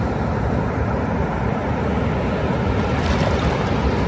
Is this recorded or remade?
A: recorded